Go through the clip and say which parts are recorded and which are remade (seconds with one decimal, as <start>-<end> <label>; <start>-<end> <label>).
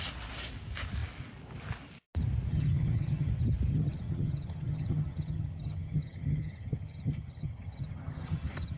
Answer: 0.0-2.5 recorded; 2.5-3.3 remade; 3.3-3.7 recorded; 3.7-8.8 remade